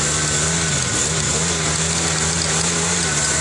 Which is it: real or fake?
real